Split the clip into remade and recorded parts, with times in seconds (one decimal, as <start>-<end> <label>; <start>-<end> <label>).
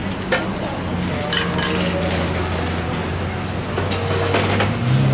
0.0-5.1 recorded